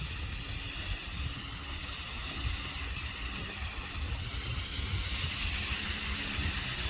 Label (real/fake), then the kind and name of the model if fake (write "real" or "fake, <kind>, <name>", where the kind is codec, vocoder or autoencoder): real